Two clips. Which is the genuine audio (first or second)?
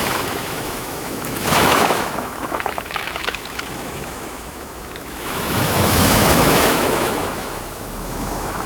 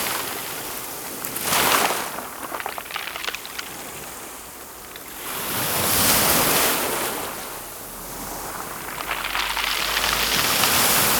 second